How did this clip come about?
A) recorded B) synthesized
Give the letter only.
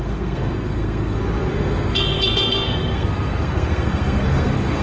B